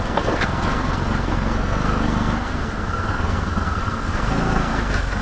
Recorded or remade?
remade